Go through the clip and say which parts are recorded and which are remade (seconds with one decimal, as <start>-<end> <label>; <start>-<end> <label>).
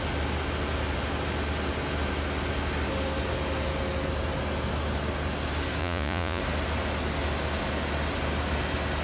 0.0-5.8 recorded; 5.8-6.4 remade; 6.4-9.0 recorded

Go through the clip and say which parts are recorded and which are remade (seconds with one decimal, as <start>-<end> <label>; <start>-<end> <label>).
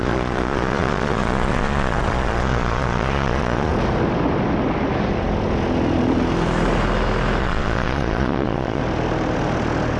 0.0-3.7 remade; 3.7-7.4 recorded; 7.4-8.8 remade; 8.8-10.0 recorded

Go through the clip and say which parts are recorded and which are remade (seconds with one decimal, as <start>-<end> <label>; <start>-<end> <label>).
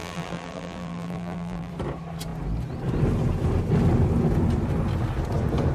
0.0-1.7 remade; 1.7-5.7 recorded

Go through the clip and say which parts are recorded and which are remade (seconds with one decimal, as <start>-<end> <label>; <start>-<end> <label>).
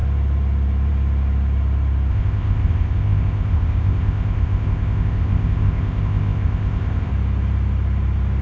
0.0-2.1 recorded; 2.1-7.1 remade; 7.1-8.4 recorded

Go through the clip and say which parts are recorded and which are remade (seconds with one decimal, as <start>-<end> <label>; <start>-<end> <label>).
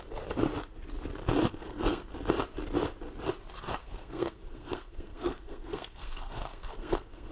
0.0-1.5 recorded; 1.5-2.1 remade; 2.1-3.8 recorded; 3.8-7.3 remade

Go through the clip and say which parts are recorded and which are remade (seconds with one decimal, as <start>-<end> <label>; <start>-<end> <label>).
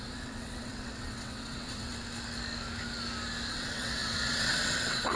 0.0-1.9 remade; 1.9-3.5 recorded; 3.5-5.2 remade